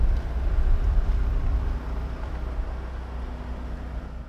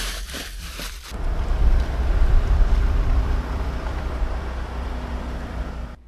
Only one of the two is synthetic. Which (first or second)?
second